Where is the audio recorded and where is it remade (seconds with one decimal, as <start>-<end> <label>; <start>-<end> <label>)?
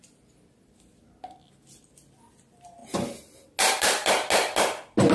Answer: 0.0-5.1 recorded